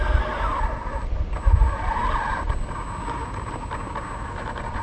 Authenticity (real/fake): real